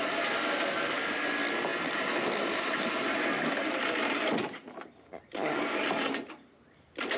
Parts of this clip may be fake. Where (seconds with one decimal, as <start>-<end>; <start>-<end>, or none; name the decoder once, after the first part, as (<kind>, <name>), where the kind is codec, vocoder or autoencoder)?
none